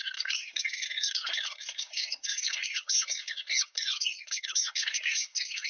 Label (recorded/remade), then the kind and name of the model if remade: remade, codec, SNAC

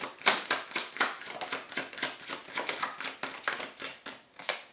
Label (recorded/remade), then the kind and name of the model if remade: recorded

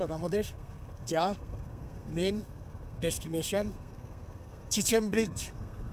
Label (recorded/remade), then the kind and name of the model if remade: remade, codec, SNAC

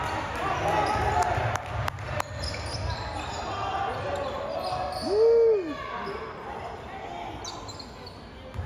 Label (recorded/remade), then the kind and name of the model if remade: recorded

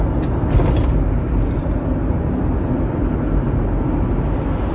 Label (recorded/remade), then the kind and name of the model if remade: recorded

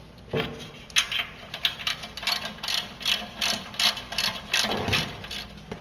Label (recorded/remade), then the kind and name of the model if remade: recorded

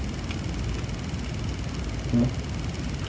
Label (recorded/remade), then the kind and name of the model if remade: recorded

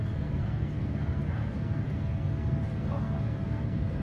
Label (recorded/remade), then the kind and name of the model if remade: remade, codec, SNAC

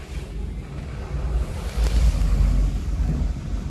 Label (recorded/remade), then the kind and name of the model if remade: recorded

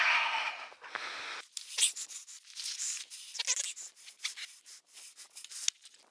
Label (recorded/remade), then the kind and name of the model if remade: recorded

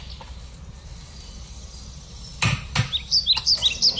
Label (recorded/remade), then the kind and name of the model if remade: recorded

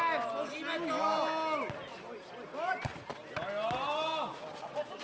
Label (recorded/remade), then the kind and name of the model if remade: recorded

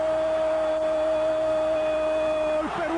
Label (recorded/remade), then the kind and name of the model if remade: recorded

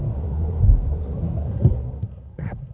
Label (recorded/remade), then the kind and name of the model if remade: remade, codec, SNAC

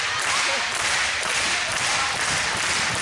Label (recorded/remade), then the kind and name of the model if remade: recorded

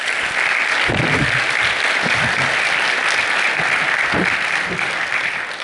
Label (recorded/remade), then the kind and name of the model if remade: recorded